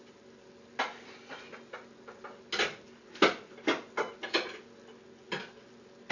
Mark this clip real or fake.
real